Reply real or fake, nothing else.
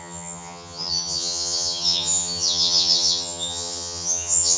fake